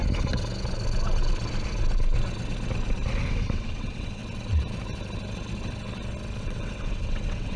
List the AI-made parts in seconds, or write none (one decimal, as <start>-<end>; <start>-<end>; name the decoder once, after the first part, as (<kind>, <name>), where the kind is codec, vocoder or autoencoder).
3.3-4.2 (vocoder, WaveNeXt); 6.4-7.6